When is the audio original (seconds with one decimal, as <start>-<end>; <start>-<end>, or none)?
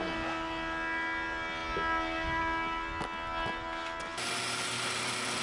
0.0-5.4